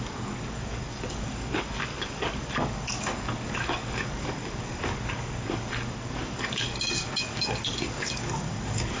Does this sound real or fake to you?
fake